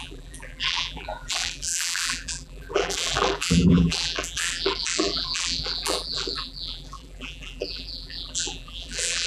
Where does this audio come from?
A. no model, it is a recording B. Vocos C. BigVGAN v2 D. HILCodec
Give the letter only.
C